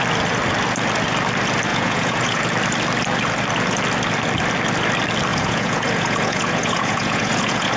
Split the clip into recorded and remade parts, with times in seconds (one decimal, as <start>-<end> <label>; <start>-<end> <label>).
0.0-1.7 recorded; 1.7-2.4 remade; 2.4-5.3 recorded; 5.3-7.8 remade